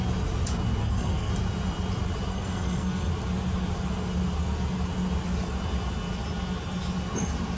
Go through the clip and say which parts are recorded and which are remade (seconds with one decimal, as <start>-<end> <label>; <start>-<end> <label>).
0.0-0.8 recorded; 0.8-1.3 remade; 1.3-2.3 recorded; 2.3-3.1 remade; 3.1-7.6 recorded